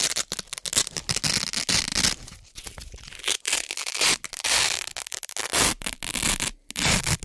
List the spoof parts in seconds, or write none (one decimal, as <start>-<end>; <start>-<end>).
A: none